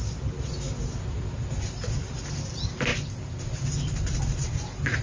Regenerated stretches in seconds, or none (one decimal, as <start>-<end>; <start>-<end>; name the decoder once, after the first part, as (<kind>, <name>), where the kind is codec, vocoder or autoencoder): none